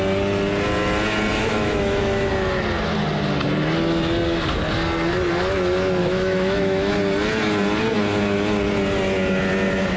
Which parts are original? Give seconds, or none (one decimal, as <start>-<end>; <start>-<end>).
0.0-1.3; 2.3-6.0; 6.9-10.0